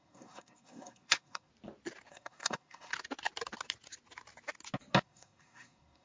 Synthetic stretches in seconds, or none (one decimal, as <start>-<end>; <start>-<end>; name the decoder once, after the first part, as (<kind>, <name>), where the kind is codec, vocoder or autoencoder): 0.0-1.5 (codec, SNAC); 2.1-2.9; 5.0-6.0